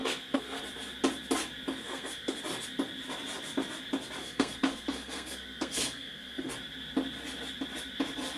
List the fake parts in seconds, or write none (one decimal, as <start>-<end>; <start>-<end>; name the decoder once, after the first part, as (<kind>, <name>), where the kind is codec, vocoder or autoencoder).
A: 0.0-0.6 (codec, SNAC); 1.8-2.4; 4.2-6.5